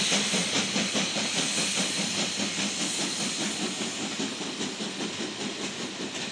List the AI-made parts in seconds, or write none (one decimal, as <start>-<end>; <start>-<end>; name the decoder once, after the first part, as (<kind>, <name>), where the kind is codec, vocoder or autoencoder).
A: none